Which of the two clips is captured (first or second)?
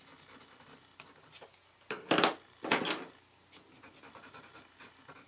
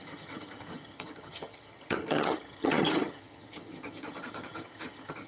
first